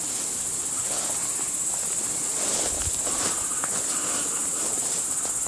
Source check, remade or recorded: recorded